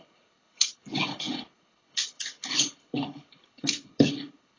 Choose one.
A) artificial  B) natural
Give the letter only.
A